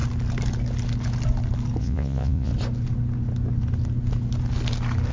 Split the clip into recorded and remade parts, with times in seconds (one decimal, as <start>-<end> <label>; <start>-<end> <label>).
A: 0.0-1.8 recorded; 1.8-2.5 remade; 2.5-5.1 recorded